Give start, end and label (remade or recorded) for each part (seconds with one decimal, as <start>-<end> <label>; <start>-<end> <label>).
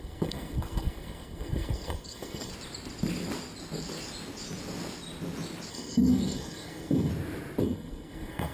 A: 0.0-2.5 remade; 2.5-5.7 recorded; 5.7-7.1 remade; 7.1-7.6 recorded; 7.6-8.5 remade